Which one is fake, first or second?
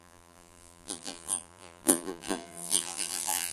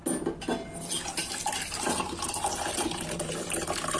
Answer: first